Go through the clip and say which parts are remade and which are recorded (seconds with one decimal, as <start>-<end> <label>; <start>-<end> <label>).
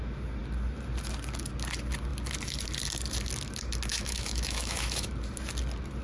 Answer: 0.0-3.9 recorded; 3.9-5.1 remade; 5.1-6.0 recorded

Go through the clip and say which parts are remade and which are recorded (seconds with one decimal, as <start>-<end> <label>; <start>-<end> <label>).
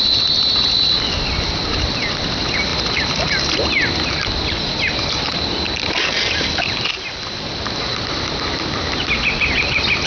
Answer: 0.0-10.1 recorded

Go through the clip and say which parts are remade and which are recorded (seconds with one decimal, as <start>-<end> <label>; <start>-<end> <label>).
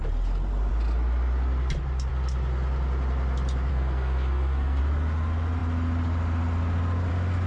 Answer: 0.0-3.7 recorded; 3.7-4.8 remade; 4.8-7.5 recorded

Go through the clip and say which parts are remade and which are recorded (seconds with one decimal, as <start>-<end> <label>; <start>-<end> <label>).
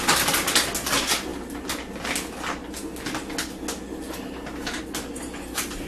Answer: 0.0-5.9 recorded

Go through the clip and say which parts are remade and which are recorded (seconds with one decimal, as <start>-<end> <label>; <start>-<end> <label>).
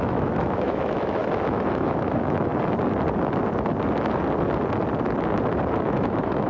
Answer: 0.0-2.5 remade; 2.5-5.7 recorded; 5.7-6.5 remade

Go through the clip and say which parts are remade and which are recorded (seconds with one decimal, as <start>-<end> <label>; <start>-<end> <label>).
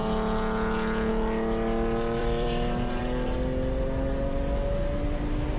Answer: 0.0-2.2 recorded; 2.2-3.0 remade; 3.0-5.6 recorded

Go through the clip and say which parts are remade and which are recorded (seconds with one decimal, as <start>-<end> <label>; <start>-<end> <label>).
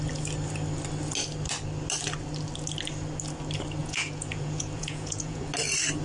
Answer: 0.0-3.8 recorded; 3.8-5.4 remade; 5.4-6.0 recorded